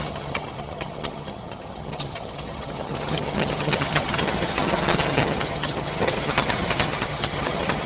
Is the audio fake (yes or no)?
yes